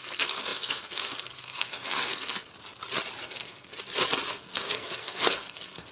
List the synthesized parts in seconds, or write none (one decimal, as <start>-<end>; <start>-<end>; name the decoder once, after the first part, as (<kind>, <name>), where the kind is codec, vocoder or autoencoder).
0.0-2.5 (codec, SNAC); 3.2-3.7; 4.3-5.9